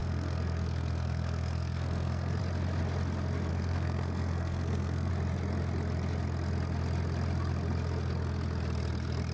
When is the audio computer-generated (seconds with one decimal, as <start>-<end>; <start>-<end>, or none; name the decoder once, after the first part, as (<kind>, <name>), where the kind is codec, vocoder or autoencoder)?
0.0-2.4 (codec, SNAC); 3.5-5.1